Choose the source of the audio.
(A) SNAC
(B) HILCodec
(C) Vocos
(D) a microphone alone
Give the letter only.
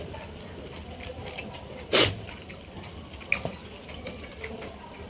D